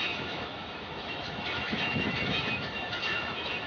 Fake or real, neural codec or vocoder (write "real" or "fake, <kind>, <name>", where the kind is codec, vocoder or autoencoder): fake, autoencoder, DAC-VAE